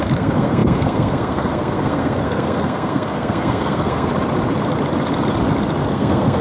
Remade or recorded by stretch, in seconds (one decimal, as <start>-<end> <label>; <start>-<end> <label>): 0.0-4.1 remade; 4.1-5.9 recorded; 5.9-6.4 remade